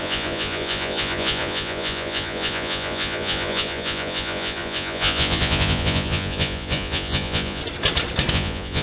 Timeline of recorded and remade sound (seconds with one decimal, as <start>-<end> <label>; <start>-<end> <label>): 0.0-7.6 remade; 7.6-8.3 recorded; 8.3-8.8 remade